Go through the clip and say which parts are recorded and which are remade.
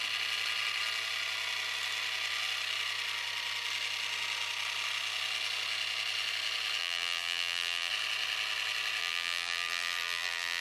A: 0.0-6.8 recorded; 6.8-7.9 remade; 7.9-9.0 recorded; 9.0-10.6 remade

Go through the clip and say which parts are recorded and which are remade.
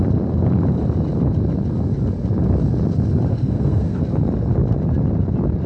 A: 0.0-3.3 recorded; 3.3-4.0 remade; 4.0-5.7 recorded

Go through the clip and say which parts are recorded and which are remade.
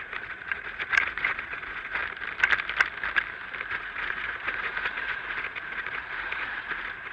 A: 0.0-2.0 remade; 2.0-3.7 recorded; 3.7-7.1 remade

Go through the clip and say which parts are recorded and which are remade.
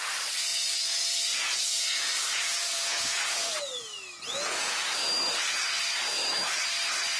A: 0.0-0.5 recorded; 0.5-4.8 remade; 4.8-7.2 recorded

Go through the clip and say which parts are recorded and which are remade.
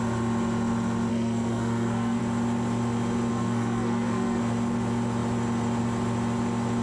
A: 0.0-1.1 recorded; 1.1-2.2 remade; 2.2-3.3 recorded; 3.3-4.4 remade; 4.4-6.8 recorded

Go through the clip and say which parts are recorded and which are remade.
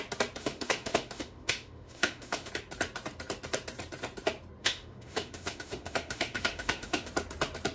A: 0.0-0.4 recorded; 0.4-2.5 remade; 2.5-4.6 recorded; 4.6-7.1 remade; 7.1-7.7 recorded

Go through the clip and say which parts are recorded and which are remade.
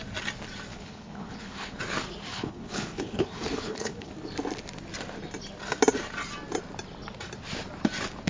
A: 0.0-0.7 recorded; 0.7-1.8 remade; 1.8-2.3 recorded; 2.3-4.1 remade; 4.1-8.3 recorded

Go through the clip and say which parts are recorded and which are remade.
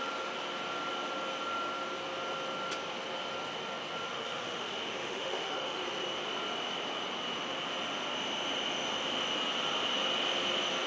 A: 0.0-4.1 recorded; 4.1-5.8 remade; 5.8-10.9 recorded